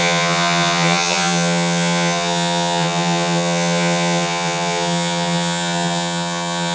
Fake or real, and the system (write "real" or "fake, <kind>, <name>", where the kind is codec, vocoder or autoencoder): fake, vocoder, HiFi-GAN